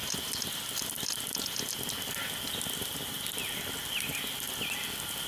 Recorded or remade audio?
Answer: recorded